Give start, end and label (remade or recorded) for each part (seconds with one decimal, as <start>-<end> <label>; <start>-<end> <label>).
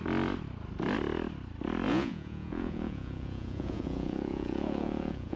0.0-1.9 recorded; 1.9-5.4 remade